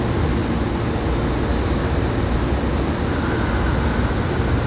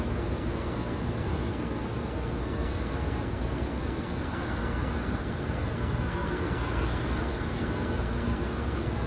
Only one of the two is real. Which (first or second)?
first